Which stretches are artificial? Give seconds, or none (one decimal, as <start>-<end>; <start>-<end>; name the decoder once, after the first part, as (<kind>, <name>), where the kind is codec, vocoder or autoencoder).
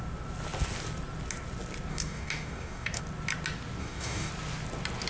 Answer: 1.9-3.0 (codec, DAC); 3.8-4.3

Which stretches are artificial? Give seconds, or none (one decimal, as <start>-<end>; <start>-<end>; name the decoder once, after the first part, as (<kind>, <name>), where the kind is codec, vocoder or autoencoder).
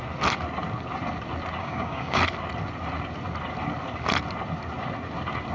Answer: 1.6-2.2 (codec, DAC)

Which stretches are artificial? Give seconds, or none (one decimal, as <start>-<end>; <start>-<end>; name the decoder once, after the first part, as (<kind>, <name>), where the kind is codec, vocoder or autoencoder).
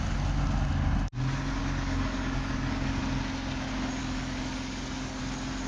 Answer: 1.6-3.0 (codec, DAC); 4.0-5.2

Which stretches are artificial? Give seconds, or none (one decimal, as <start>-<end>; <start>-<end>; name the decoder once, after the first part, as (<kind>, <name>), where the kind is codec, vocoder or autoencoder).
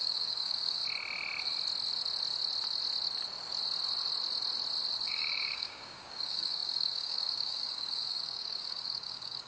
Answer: 0.0-0.8 (codec, DAC); 5.1-9.5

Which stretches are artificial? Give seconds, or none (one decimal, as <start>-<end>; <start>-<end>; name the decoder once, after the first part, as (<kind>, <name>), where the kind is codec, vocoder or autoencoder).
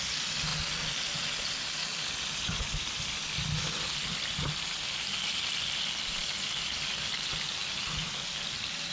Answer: none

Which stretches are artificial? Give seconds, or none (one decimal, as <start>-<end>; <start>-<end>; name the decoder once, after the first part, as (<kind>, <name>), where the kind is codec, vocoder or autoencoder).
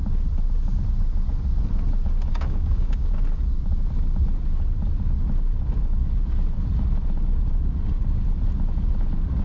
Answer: 2.3-3.1 (codec, DAC)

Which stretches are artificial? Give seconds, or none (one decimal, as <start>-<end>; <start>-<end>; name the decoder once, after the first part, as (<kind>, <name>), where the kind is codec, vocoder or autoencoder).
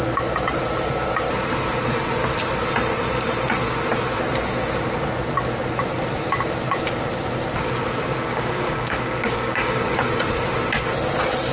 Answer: 8.3-10.1 (codec, DAC)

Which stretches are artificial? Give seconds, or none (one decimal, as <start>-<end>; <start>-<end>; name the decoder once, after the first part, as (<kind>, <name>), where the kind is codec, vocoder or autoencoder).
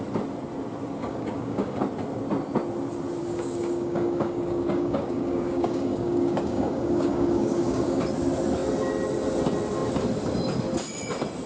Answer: 1.0-1.8 (codec, DAC); 3.2-8.0